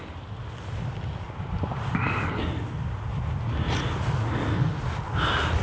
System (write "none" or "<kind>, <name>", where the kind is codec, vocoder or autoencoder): none